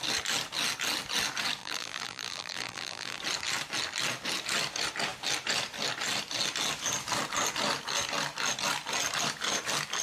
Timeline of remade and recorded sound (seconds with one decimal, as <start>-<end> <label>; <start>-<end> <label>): 0.0-1.6 recorded; 1.6-3.2 remade; 3.2-10.0 recorded